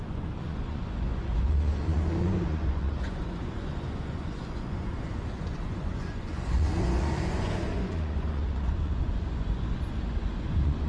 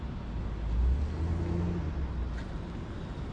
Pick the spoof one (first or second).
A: first